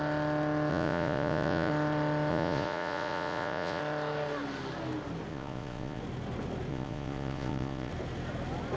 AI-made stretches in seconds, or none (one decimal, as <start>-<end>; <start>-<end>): 0.7-1.7; 2.3-3.8; 5.3-6.0; 6.7-7.9